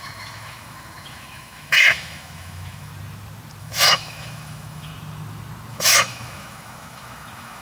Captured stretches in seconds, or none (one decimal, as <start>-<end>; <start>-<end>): 2.9-3.6; 4.9-5.7